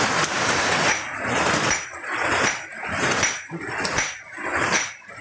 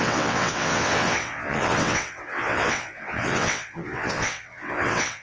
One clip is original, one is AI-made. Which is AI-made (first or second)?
second